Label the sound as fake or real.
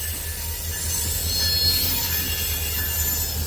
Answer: real